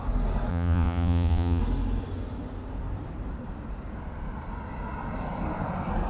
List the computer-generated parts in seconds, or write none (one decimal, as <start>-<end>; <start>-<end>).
0.5-1.6